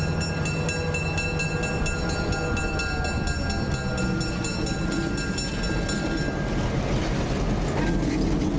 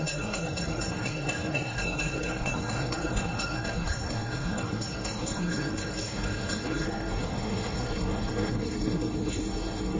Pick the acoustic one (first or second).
first